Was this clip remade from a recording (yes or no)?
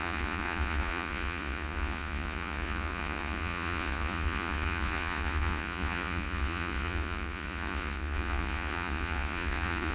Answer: yes